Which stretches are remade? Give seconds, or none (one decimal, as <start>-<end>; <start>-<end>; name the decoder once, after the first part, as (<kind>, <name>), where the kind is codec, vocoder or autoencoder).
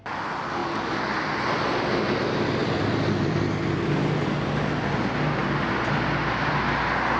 2.6-4.0 (vocoder, BigVGAN v2)